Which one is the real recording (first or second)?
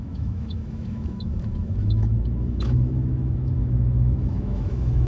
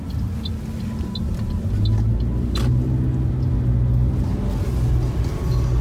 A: second